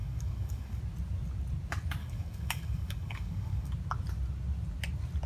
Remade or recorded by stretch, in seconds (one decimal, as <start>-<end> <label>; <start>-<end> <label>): 0.0-0.8 remade; 0.8-2.0 recorded; 2.0-3.7 remade; 3.7-5.3 recorded